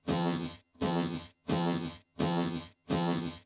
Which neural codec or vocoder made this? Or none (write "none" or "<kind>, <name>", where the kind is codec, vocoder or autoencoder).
vocoder, HiFi-GAN